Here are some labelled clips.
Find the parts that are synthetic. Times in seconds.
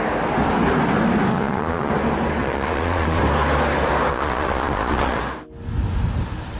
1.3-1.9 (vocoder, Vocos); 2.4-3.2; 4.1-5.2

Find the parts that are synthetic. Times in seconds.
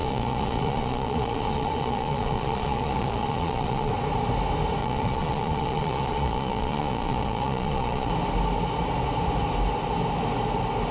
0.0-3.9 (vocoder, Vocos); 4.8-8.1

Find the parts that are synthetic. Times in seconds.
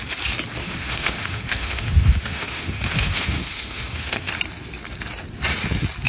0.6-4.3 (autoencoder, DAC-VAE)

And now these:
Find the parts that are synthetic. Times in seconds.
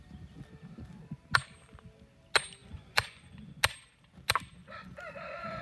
2.6-3.5 (vocoder, Vocos); 4.6-5.6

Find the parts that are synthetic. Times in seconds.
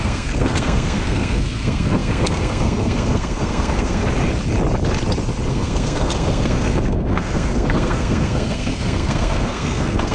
0.0-4.0 (codec, SNAC); 5.5-10.1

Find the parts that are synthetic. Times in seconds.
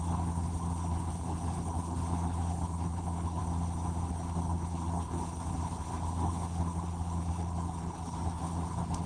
0.0-3.4 (codec, HILCodec); 4.1-9.1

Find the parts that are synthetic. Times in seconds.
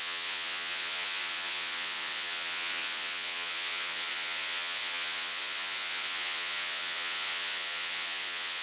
0.0-8.6 (vocoder, Vocos)